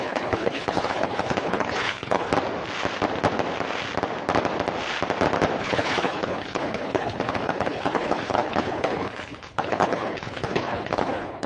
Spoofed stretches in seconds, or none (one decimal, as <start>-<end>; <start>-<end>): 0.0-2.3; 5.6-11.5